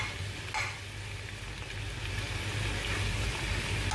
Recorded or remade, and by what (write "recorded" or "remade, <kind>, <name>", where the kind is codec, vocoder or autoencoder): recorded